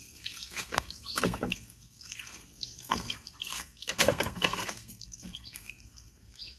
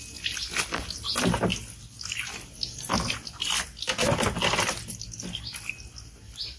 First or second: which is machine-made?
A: first